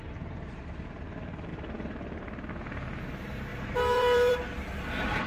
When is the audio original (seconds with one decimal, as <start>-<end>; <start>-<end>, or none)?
0.0-3.5; 4.3-5.3